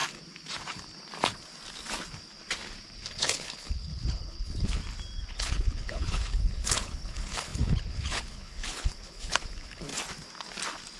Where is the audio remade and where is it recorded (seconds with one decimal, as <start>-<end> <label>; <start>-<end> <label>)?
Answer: 0.0-3.1 recorded; 3.1-4.8 remade; 4.8-5.3 recorded; 5.3-9.9 remade; 9.9-11.0 recorded

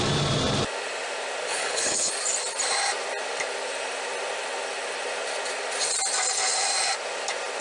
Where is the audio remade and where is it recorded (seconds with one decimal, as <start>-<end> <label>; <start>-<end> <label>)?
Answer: 0.0-1.5 recorded; 1.5-2.1 remade; 2.1-7.6 recorded